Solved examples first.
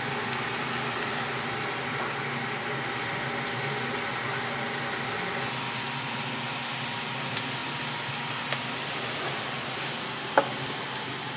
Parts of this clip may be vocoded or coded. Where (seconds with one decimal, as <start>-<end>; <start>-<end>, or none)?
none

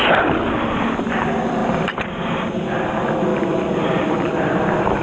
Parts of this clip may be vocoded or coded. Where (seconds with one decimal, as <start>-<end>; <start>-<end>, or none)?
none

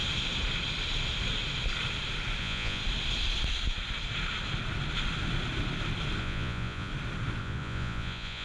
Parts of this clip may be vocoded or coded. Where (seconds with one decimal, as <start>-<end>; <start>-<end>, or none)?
2.4-2.8; 6.2-6.9; 7.4-8.4

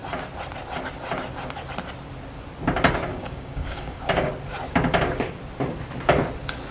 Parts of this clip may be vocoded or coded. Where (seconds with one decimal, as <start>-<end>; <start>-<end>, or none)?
3.1-4.3

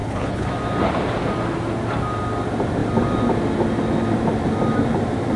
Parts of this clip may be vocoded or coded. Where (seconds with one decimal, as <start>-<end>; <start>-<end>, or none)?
0.0-0.5

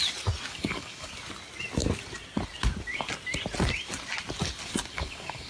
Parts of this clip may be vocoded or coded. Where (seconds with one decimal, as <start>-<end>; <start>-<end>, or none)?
0.5-1.1; 4.9-5.5